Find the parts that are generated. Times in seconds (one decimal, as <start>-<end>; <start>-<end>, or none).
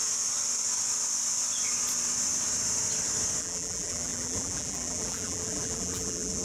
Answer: 3.4-6.4